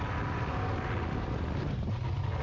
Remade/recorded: recorded